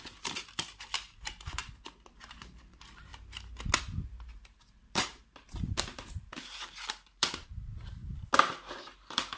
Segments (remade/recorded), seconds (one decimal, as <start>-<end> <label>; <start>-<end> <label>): 0.0-1.6 remade; 1.6-2.1 recorded; 2.1-3.1 remade; 3.1-3.8 recorded; 3.8-8.0 remade; 8.0-8.7 recorded; 8.7-9.4 remade